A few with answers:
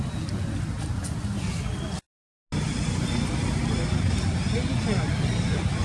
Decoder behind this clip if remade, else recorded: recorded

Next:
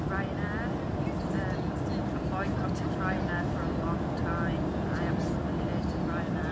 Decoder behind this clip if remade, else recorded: recorded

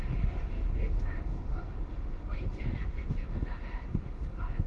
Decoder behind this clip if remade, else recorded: remade, autoencoder, DAC-VAE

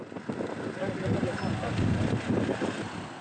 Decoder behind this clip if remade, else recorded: recorded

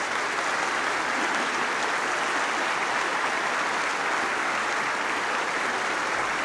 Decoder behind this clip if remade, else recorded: recorded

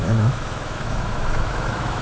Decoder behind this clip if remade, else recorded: remade, autoencoder, DAC-VAE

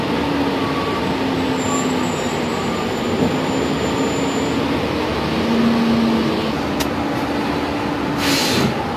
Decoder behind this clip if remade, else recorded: recorded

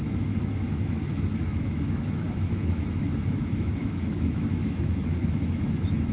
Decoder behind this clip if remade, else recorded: remade, autoencoder, DAC-VAE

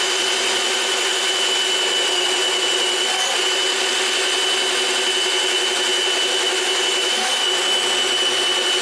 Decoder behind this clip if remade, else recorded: recorded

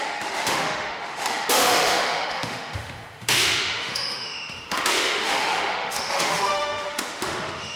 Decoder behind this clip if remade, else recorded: remade, autoencoder, DAC-VAE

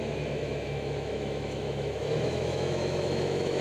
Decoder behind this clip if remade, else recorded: remade, autoencoder, DAC-VAE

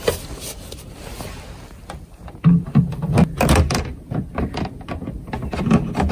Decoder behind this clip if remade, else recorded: recorded